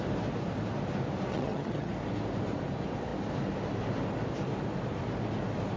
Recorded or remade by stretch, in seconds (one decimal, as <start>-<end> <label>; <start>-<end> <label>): 0.0-1.3 recorded; 1.3-1.9 remade; 1.9-5.8 recorded